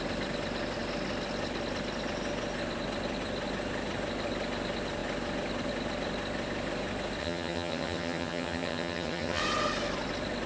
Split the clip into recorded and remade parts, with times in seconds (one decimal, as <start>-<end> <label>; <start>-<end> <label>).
0.0-7.2 recorded; 7.2-9.4 remade; 9.4-10.5 recorded